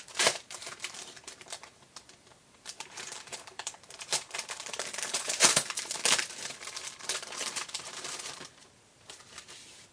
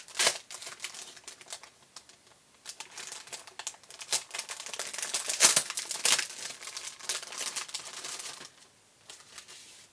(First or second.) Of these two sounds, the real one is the second